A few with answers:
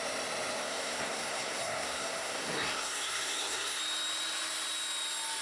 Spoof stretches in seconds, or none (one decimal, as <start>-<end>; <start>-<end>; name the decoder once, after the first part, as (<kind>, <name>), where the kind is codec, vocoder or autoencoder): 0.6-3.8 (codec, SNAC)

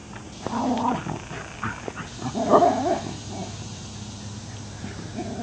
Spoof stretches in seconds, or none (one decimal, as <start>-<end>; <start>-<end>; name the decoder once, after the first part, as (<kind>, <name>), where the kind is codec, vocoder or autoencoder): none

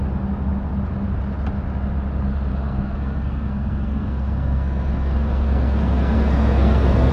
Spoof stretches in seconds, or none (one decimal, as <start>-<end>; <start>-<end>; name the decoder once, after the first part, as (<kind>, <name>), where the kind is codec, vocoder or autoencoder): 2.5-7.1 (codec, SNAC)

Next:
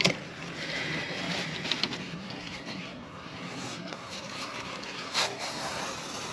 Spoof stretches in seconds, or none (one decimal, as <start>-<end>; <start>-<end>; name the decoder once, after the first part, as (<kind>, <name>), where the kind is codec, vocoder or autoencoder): 2.0-5.8 (codec, SNAC)

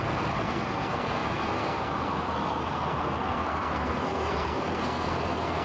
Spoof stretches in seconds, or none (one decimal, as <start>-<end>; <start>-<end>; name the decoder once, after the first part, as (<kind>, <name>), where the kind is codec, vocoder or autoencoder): 0.0-5.6 (codec, SNAC)

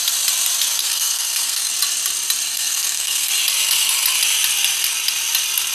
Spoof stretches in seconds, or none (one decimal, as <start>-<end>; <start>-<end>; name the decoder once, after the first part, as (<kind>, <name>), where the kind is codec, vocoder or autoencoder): 0.8-1.7 (codec, SNAC); 2.5-3.3